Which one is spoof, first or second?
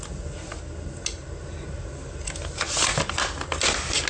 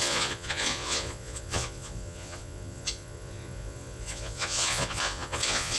second